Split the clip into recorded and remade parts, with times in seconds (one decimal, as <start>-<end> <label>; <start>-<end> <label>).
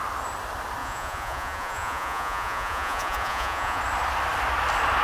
0.0-0.8 recorded; 0.8-3.8 remade; 3.8-5.0 recorded